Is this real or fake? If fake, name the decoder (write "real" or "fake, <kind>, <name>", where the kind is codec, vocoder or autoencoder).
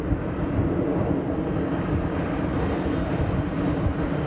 real